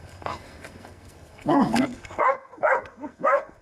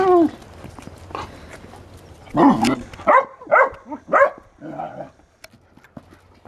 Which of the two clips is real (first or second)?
second